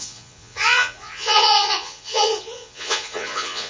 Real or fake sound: fake